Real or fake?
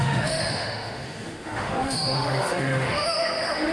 fake